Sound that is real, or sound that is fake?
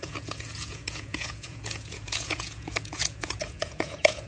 fake